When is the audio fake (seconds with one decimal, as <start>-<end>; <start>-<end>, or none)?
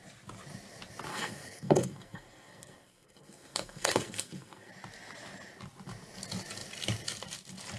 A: 1.1-4.7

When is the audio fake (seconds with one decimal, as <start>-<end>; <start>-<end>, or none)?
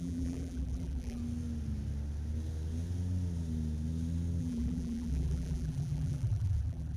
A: 0.0-1.2; 4.4-7.0